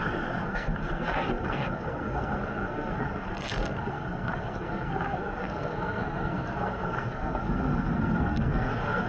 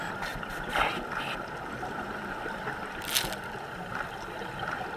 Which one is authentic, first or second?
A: second